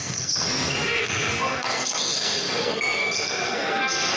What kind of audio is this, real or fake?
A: fake